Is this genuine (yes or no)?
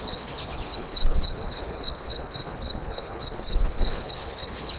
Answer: no